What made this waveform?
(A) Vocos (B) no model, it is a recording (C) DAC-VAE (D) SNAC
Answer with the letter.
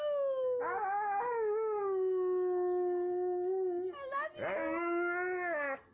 B